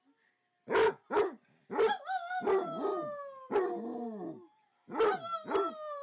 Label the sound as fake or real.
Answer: real